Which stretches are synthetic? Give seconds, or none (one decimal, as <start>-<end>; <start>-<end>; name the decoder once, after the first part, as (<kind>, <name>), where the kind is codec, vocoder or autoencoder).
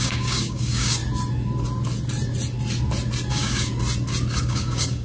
0.0-1.0 (codec, DAC); 3.3-3.7; 4.4-5.0